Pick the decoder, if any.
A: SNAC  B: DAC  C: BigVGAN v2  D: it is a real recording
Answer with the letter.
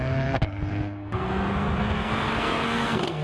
A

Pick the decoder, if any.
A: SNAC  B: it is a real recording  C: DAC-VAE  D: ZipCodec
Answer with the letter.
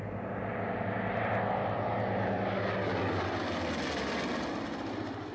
B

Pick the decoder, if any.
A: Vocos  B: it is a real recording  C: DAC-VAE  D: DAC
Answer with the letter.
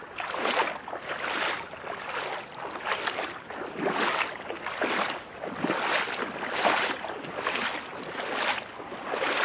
B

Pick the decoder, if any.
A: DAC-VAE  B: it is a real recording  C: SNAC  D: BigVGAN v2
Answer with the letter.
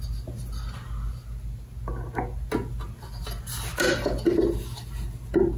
B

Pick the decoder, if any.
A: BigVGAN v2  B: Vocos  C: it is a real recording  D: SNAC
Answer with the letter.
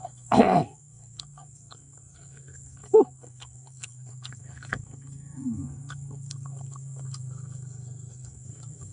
D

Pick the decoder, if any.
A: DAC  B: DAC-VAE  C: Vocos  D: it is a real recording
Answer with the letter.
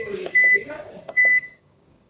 A